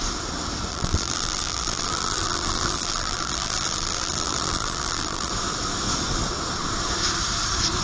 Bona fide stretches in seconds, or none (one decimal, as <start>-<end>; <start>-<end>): 0.0-0.7; 5.3-7.8